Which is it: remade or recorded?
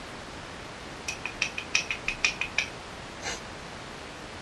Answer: recorded